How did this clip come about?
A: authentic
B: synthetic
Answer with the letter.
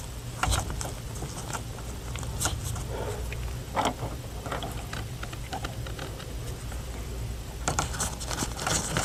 A